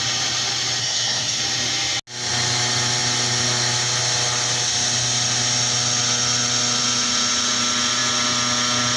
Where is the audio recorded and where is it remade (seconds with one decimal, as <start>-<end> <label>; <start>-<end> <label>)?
0.0-0.8 recorded; 0.8-1.4 remade; 1.4-9.0 recorded